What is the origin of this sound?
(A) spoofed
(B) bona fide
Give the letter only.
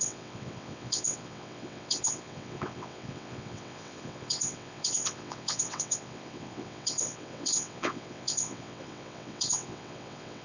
A